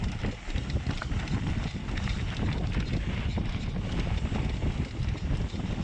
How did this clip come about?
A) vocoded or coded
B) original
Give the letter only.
B